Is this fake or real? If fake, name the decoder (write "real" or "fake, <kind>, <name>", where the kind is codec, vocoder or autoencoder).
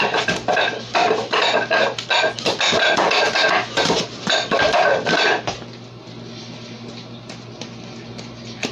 real